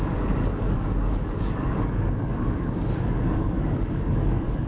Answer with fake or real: fake